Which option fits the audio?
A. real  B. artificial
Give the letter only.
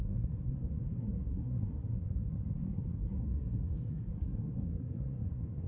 B